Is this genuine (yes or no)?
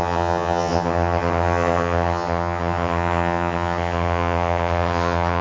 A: no